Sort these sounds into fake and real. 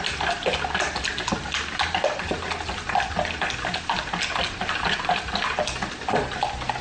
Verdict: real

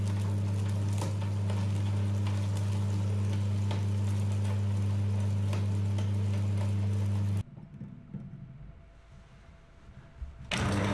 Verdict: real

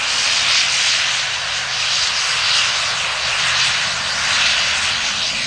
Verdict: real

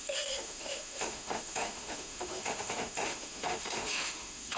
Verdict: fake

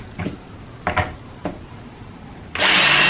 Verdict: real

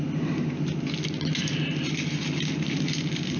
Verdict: real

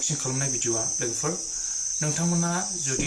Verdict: real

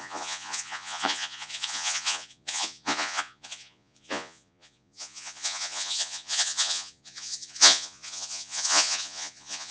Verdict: fake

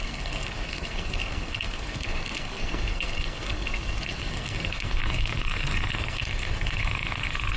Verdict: fake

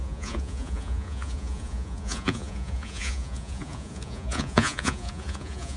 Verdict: fake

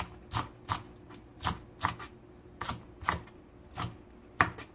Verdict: real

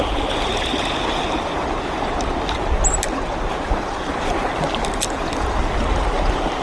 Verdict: real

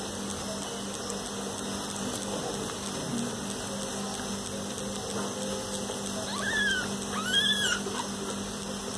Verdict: real